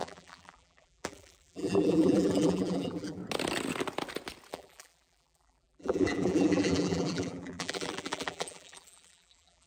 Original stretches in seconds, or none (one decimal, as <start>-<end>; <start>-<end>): 3.2-4.5

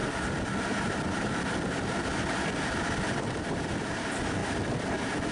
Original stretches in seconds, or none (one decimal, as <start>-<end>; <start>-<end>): 0.0-3.2